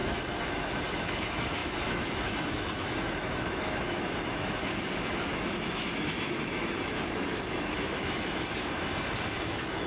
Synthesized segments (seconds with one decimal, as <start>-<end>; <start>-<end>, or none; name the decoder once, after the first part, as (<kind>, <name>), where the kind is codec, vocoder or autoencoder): 0.0-8.6 (autoencoder, DAC-VAE); 9.2-9.9